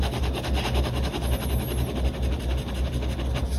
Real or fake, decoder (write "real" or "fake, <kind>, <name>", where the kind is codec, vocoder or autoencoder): real